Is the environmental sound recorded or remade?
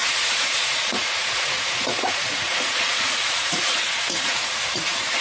remade